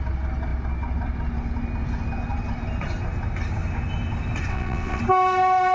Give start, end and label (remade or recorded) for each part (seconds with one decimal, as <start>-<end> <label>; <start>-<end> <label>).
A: 0.0-4.5 recorded; 4.5-5.0 remade; 5.0-5.7 recorded